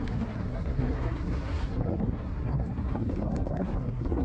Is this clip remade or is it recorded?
remade